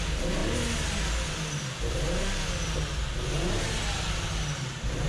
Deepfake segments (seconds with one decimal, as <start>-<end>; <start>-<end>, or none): none